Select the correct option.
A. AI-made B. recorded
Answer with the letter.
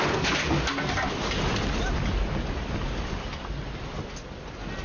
B